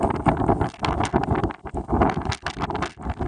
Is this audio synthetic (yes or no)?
no